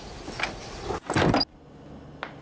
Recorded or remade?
recorded